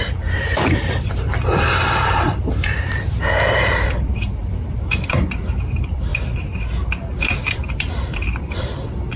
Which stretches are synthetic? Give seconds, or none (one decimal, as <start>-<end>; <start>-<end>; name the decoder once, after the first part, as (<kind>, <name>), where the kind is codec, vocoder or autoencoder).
0.0-4.4 (vocoder, BigVGAN v2); 5.1-6.1; 7.2-9.2